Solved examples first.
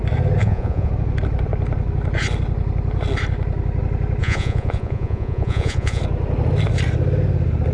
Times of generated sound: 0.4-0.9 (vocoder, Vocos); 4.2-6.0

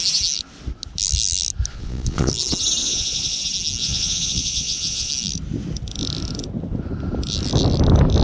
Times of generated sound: 1.7-2.3 (vocoder, Vocos); 2.8-3.4; 3.8-5.1

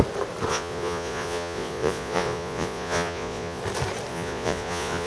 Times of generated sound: 0.5-3.6 (vocoder, Vocos); 4.1-5.1

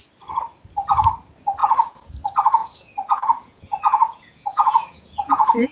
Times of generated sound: 1.6-2.1 (vocoder, Vocos); 2.6-5.7

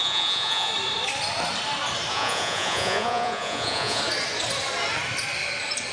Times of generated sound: 0.0-0.7 (vocoder, Vocos); 2.1-4.0